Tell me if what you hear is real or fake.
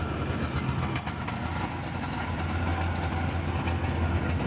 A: real